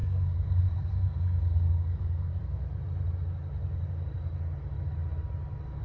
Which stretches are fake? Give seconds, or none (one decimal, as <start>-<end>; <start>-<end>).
0.0-2.3